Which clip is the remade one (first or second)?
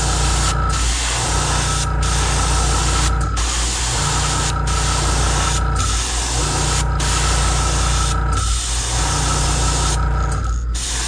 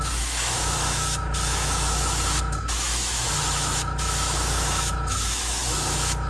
second